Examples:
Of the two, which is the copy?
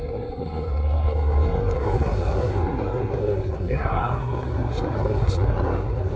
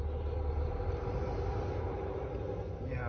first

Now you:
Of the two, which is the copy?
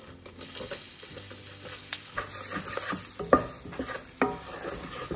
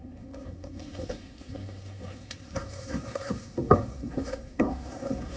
second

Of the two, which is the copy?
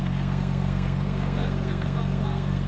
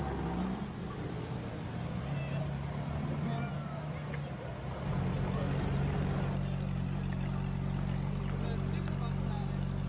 first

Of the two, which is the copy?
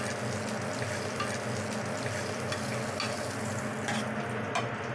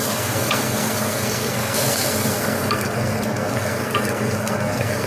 second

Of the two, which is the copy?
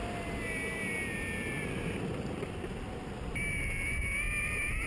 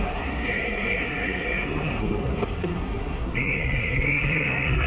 second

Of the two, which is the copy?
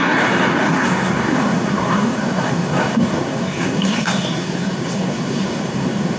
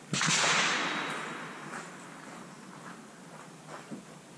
first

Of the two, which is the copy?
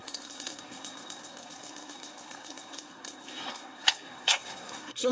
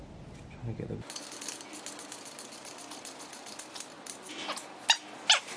first